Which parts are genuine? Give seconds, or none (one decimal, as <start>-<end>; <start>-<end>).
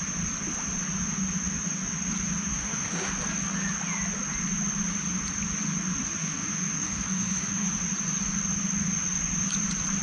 0.0-2.5; 3.1-6.2; 7.8-10.0